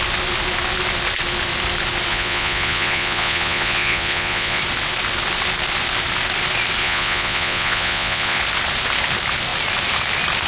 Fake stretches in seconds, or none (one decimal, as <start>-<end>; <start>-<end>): 2.1-4.6; 6.8-8.4